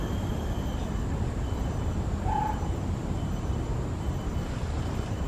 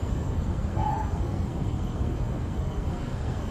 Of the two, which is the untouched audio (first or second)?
first